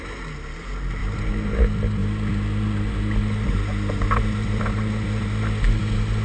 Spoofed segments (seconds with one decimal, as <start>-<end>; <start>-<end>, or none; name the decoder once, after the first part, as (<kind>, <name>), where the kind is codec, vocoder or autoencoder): none